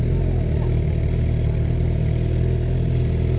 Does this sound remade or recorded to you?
recorded